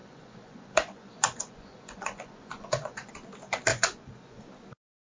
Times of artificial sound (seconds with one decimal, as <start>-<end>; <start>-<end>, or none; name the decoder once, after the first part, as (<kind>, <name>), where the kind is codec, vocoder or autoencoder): 0.0-3.1 (vocoder, Vocos); 3.7-4.4